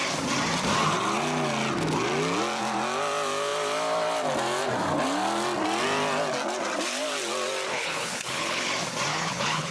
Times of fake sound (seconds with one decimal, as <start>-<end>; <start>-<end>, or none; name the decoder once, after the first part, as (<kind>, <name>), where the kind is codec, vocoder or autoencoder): 7.7-8.7 (codec, HILCodec); 9.1-9.7